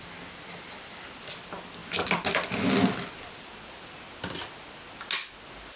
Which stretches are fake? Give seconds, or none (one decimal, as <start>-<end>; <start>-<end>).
none

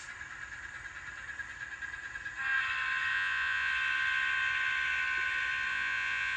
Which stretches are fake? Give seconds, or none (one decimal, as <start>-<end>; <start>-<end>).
3.1-3.7; 5.7-6.4

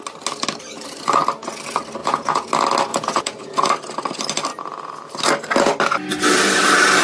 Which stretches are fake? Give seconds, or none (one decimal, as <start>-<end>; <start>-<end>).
2.0-2.5; 2.9-3.7; 4.5-5.1

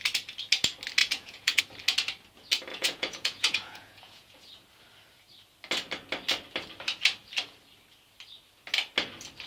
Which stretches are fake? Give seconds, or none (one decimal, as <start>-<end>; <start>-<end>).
1.0-1.6; 2.7-4.4

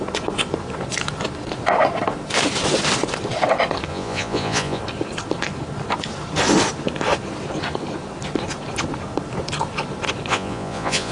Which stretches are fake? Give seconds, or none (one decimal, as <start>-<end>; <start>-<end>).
3.9-4.8; 10.3-11.1

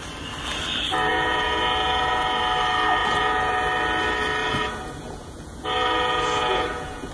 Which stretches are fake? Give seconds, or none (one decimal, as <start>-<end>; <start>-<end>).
1.1-2.4; 3.0-3.5; 4.4-7.1

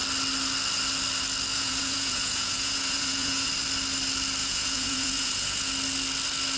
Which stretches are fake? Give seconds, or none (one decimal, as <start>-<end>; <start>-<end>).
1.5-3.5; 4.4-5.7